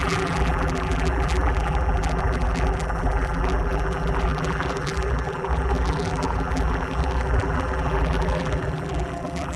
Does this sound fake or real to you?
fake